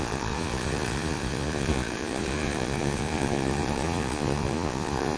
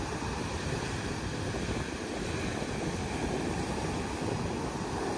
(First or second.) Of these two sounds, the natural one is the second